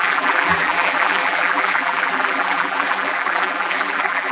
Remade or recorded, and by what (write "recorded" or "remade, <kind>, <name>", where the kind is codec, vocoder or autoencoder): remade, vocoder, BigVGAN v2